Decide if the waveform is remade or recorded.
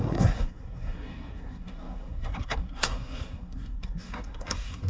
remade